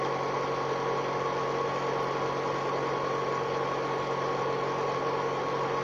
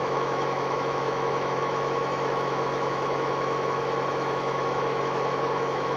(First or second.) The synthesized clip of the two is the second